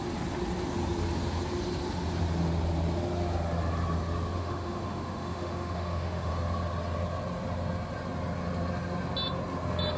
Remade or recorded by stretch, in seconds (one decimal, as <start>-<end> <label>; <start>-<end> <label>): 0.0-4.4 recorded; 4.4-6.3 remade; 6.3-10.0 recorded